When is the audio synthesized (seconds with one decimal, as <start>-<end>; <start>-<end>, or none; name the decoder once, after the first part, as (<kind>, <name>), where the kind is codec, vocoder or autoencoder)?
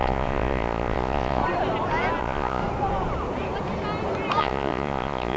0.0-1.4 (vocoder, Vocos); 2.2-2.6; 4.4-5.4